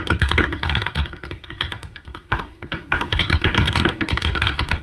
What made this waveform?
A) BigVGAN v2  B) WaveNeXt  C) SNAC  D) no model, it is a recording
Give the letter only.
C